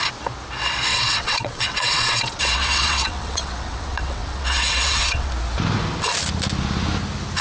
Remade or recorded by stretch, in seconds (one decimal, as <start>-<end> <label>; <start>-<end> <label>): 0.0-0.9 recorded; 0.9-5.3 remade; 5.3-7.4 recorded